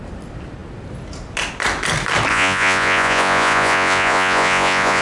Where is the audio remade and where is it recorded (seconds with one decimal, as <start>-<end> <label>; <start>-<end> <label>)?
0.0-2.3 recorded; 2.3-5.0 remade